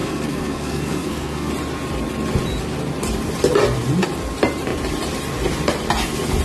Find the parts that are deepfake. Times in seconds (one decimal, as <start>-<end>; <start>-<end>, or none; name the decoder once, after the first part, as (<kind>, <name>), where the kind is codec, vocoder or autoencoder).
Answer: 0.0-1.5 (codec, SNAC)